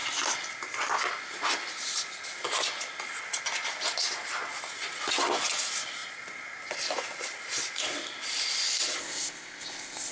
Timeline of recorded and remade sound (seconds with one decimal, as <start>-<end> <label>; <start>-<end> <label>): 0.0-9.0 recorded; 9.0-10.1 remade